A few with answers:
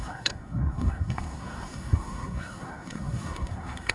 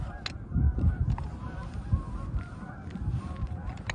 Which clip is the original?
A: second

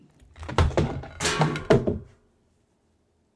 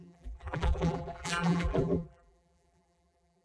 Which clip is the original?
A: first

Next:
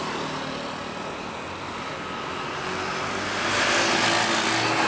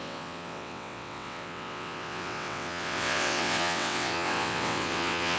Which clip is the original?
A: first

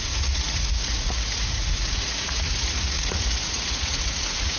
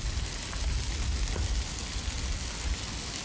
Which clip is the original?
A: second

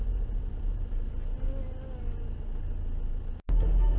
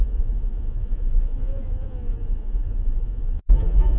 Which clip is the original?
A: first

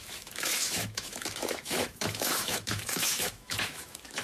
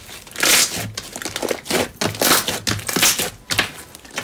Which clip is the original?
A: second